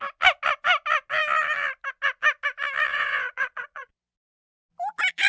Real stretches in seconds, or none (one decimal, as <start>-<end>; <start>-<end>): 0.0-2.9; 3.9-5.3